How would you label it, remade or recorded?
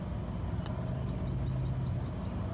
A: recorded